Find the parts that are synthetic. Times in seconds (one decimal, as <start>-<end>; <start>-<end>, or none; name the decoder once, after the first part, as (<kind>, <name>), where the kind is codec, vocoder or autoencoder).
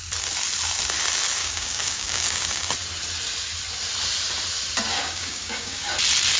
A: 1.4-2.5 (codec, DAC); 4.9-5.9